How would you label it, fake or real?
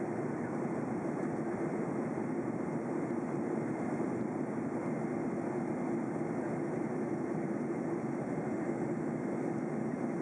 real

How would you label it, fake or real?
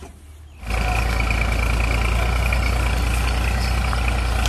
real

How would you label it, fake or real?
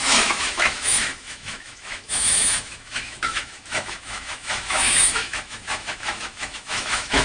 fake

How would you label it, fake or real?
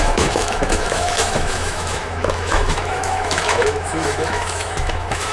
fake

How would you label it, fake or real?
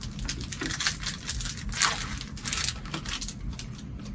real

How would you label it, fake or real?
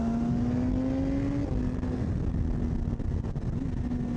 real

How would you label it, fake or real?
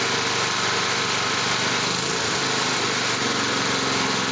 real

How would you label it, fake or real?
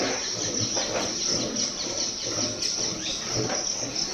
real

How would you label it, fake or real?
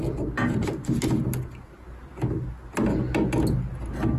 real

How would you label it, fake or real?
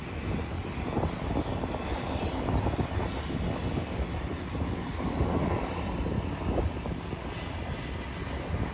real